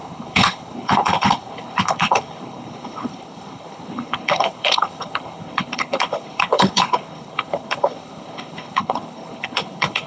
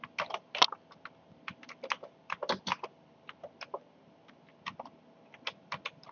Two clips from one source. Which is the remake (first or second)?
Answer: first